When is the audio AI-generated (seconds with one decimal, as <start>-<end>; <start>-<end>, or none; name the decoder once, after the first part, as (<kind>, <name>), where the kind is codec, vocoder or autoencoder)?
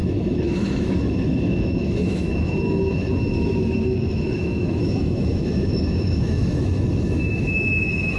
0.0-8.2 (autoencoder, DAC-VAE)